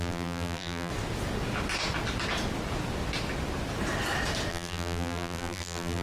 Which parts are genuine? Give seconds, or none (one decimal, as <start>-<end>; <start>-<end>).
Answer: 0.9-4.5